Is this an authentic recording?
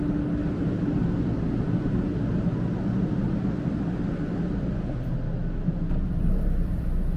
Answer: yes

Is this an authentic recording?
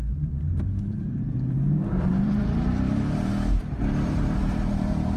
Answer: no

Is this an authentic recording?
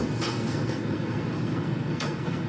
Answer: no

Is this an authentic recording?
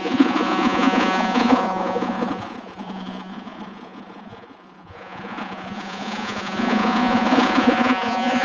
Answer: no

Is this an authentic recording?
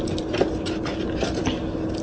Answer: yes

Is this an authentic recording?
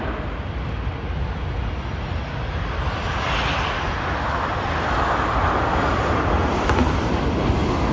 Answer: yes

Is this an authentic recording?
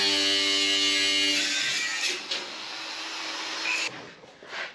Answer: yes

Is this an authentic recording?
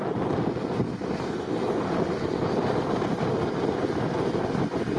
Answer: yes